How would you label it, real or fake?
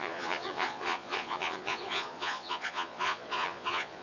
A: fake